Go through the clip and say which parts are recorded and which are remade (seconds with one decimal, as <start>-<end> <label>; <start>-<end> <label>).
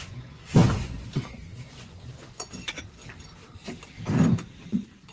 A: 0.0-3.0 remade; 3.0-4.6 recorded; 4.6-5.1 remade